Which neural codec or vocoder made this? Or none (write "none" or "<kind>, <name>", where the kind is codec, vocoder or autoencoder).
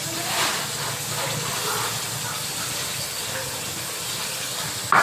none